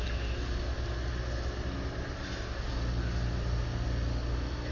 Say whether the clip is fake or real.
real